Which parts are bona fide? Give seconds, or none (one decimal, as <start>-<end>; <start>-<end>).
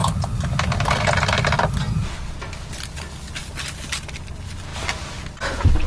0.0-5.9